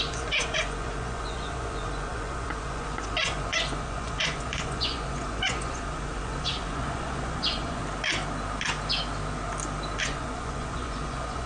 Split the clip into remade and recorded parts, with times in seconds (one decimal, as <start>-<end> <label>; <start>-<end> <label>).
0.0-7.8 remade; 7.8-10.0 recorded; 10.0-11.5 remade